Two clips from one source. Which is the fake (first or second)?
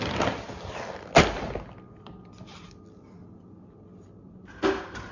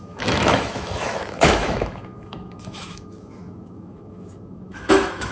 second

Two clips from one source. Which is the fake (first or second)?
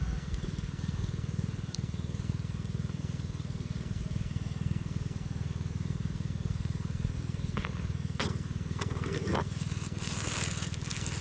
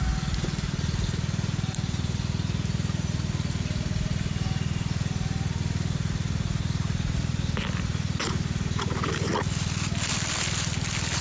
first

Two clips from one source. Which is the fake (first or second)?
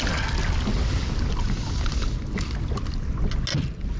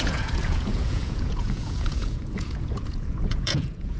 second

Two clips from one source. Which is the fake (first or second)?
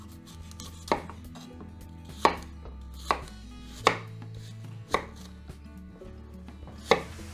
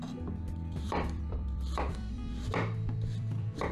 second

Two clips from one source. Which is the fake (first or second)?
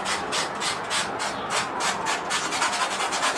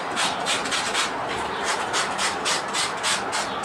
second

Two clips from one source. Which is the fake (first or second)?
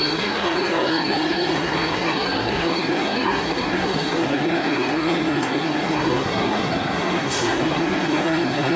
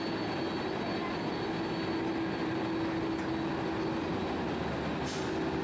first